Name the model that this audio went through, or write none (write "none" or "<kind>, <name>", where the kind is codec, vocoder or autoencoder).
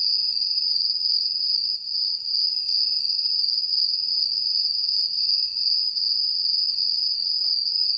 none